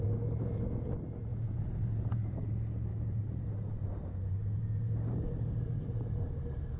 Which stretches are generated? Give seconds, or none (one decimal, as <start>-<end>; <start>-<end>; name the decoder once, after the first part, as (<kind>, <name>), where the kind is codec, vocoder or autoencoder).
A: 1.3-2.5 (vocoder, BigVGAN v2); 2.9-6.3